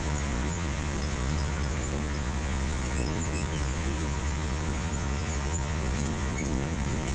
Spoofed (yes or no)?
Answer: yes